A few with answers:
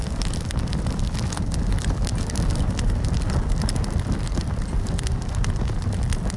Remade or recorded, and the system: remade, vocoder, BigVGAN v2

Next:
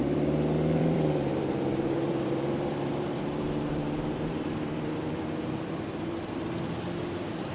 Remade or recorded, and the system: remade, vocoder, BigVGAN v2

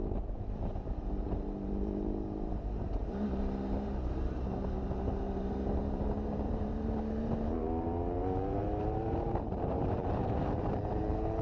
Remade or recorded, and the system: remade, vocoder, BigVGAN v2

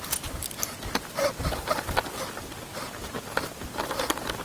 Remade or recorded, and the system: recorded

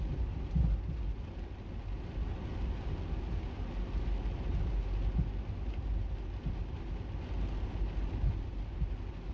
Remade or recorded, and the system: recorded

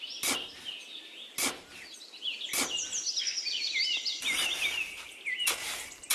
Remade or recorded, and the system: recorded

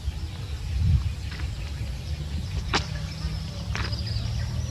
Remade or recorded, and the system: remade, vocoder, BigVGAN v2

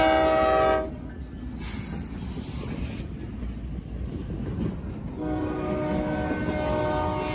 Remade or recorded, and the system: recorded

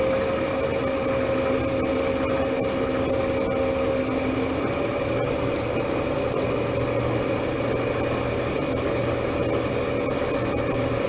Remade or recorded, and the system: recorded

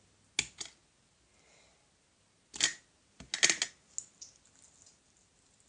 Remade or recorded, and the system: recorded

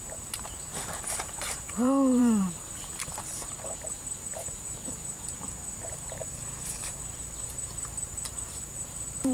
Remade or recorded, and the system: remade, vocoder, BigVGAN v2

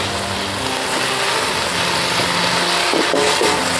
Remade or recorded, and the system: recorded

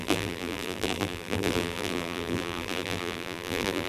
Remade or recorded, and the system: remade, vocoder, BigVGAN v2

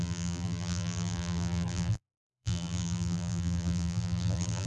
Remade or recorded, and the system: remade, vocoder, BigVGAN v2